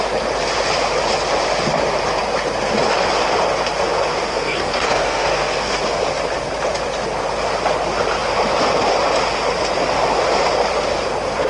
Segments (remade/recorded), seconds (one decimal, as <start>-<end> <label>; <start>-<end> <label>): 0.0-4.3 recorded; 4.3-5.8 remade; 5.8-11.5 recorded